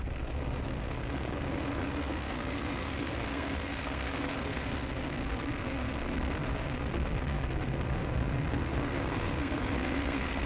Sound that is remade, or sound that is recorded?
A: remade